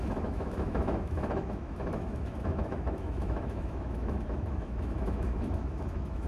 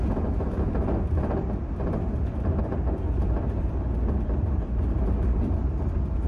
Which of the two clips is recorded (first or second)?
second